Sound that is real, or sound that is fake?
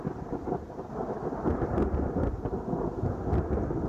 real